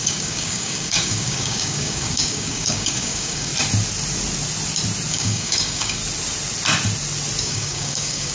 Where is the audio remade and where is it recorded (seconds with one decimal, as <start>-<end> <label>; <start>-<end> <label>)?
0.0-3.5 remade; 3.5-5.1 recorded; 5.1-6.0 remade; 6.0-7.4 recorded; 7.4-8.3 remade